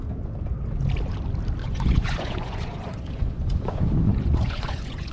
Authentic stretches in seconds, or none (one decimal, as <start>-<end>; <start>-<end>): 0.0-1.6